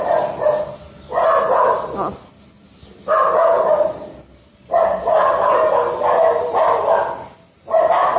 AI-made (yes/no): no